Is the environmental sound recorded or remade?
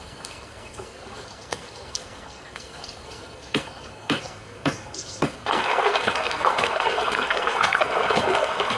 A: remade